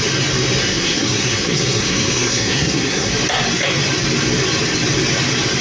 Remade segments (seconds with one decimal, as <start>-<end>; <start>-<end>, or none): 0.6-3.1